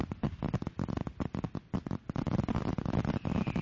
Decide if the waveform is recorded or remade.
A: recorded